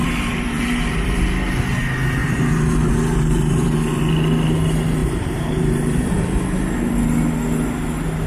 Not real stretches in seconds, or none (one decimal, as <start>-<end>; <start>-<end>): 0.0-1.2; 2.2-4.0; 5.0-6.1